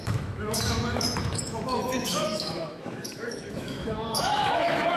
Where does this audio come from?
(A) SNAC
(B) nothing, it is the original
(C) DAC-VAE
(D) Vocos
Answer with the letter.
C